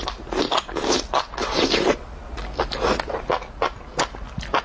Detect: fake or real real